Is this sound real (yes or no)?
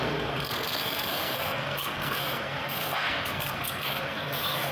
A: no